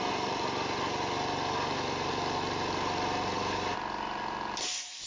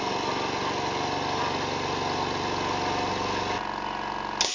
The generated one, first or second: first